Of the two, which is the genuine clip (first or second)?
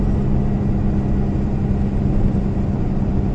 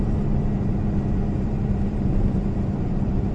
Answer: first